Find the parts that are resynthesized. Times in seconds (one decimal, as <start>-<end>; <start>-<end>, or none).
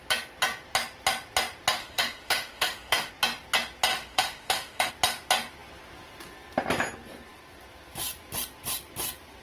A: 1.8-3.1; 3.9-4.9